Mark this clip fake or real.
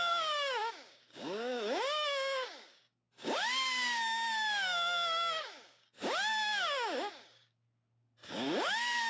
fake